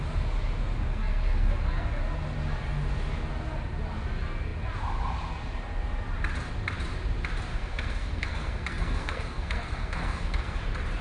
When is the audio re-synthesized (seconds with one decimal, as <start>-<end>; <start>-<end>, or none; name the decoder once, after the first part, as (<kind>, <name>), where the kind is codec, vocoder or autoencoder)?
0.9-2.0 (codec, SNAC); 7.5-10.6